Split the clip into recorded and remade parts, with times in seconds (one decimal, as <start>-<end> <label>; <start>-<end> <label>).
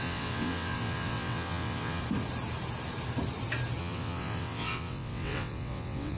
0.0-2.0 remade; 2.0-3.8 recorded; 3.8-6.2 remade